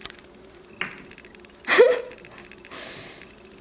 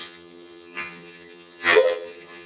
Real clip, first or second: first